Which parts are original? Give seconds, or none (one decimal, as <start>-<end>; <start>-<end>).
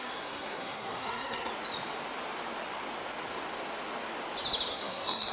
1.5-4.7